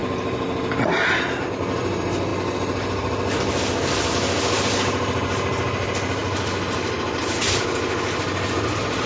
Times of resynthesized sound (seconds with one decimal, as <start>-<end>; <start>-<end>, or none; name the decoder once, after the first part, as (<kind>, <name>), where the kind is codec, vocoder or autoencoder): none